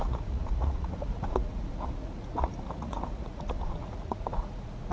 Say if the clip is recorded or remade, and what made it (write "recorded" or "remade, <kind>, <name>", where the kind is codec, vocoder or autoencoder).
remade, vocoder, Vocos